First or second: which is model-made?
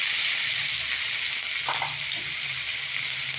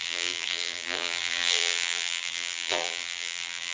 second